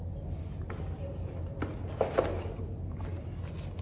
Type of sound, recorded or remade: recorded